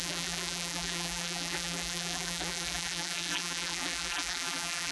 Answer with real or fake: fake